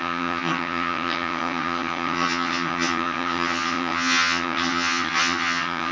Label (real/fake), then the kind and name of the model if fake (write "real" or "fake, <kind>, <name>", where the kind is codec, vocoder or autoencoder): fake, vocoder, HiFi-GAN